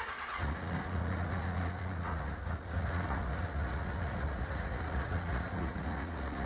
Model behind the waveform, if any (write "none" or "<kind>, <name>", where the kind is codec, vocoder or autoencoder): vocoder, Vocos